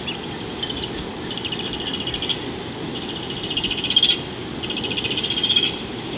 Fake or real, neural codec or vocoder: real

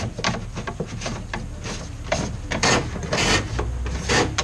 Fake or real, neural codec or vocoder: real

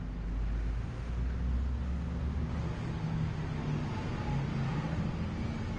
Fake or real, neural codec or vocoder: real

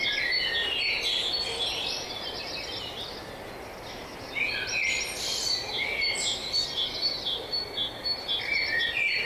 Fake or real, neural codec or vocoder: real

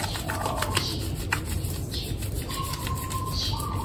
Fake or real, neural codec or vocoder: real